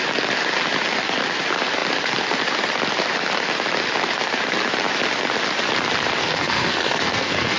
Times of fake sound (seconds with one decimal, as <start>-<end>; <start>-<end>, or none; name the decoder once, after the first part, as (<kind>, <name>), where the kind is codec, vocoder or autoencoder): 6.2-7.6 (codec, SNAC)